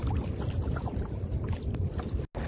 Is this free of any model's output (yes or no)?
yes